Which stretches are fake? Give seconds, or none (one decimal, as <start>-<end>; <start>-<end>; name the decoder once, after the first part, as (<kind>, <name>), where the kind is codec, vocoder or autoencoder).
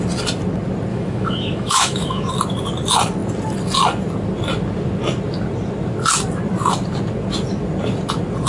0.9-2.3 (autoencoder, DAC-VAE)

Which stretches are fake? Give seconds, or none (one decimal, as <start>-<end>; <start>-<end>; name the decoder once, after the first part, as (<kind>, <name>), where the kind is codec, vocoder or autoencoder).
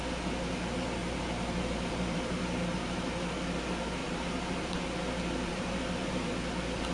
1.0-3.1 (vocoder, BigVGAN v2); 4.0-4.8; 5.5-6.3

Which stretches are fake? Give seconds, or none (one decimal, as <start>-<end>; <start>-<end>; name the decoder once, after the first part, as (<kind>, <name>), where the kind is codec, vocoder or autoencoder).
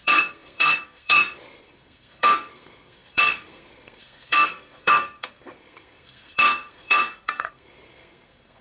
0.0-8.6 (codec, SNAC)